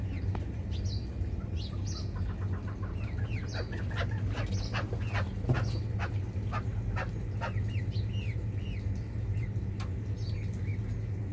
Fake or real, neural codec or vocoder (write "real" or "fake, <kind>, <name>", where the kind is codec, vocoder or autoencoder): real